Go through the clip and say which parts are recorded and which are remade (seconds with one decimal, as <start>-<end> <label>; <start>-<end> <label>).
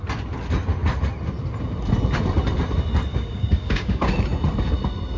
0.0-3.1 recorded; 3.1-4.1 remade; 4.1-5.2 recorded